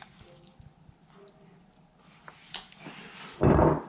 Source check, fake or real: real